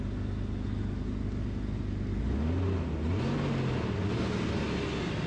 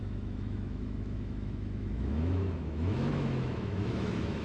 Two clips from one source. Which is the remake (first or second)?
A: second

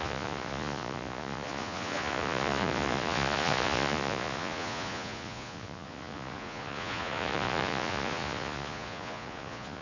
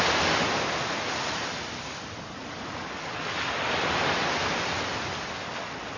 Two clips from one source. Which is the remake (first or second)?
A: first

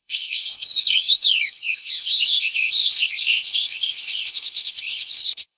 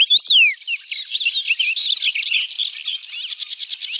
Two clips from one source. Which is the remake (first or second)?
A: first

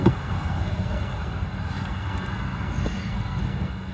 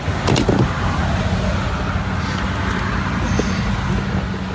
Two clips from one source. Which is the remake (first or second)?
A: first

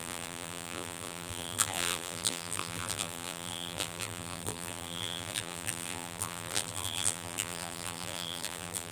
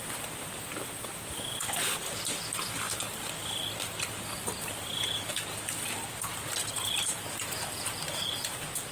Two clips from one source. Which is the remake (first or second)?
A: first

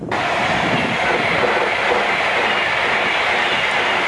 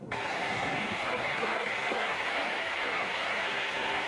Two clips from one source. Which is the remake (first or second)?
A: second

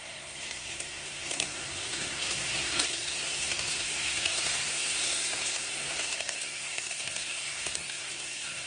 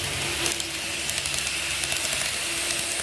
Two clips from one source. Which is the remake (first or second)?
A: first